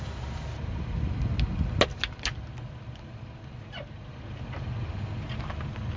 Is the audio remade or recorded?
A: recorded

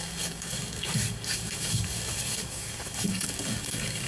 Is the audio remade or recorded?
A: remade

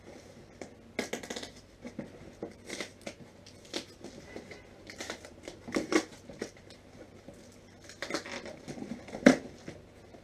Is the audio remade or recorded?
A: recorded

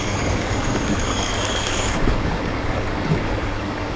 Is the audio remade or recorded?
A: remade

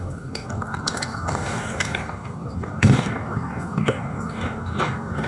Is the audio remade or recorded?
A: remade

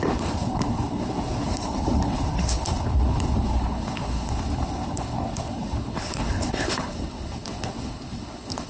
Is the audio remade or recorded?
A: remade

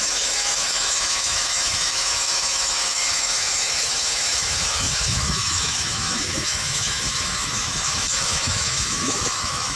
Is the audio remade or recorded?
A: remade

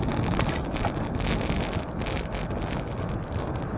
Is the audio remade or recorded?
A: recorded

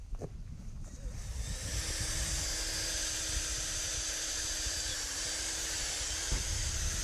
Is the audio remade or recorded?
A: remade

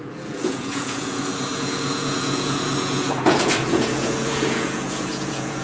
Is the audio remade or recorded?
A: remade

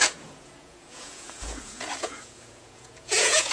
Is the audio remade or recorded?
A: remade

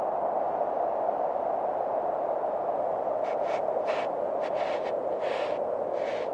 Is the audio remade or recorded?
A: recorded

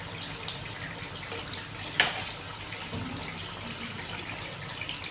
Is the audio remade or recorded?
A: recorded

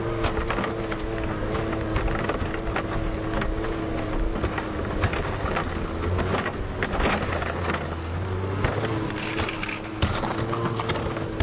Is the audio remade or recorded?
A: recorded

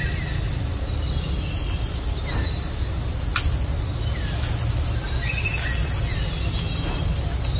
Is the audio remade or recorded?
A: recorded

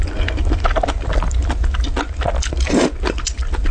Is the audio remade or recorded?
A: recorded